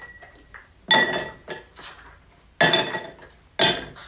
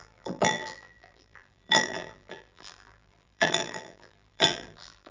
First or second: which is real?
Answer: first